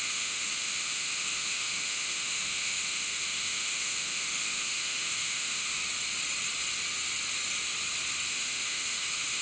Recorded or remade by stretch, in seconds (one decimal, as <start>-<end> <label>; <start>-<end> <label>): 0.0-5.8 remade; 5.8-8.3 recorded; 8.3-9.4 remade